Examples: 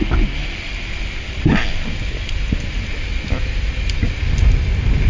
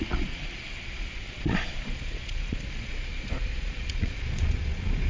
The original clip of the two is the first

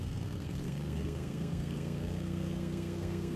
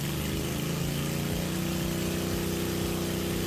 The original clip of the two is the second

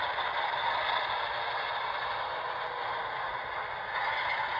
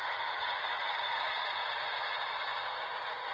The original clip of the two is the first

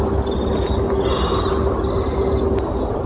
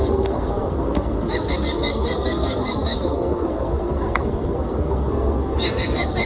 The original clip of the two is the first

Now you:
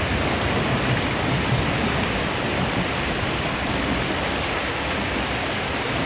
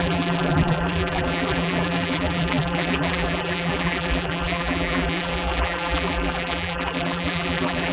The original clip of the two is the first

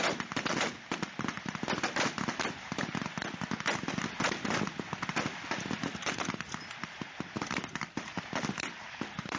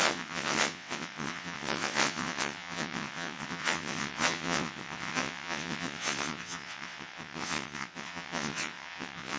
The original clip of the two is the first